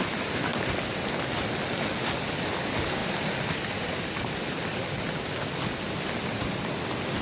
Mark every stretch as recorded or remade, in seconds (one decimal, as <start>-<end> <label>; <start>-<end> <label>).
0.0-0.5 recorded; 0.5-1.0 remade; 1.0-3.0 recorded; 3.0-3.8 remade; 3.8-4.7 recorded; 4.7-5.3 remade; 5.3-7.2 recorded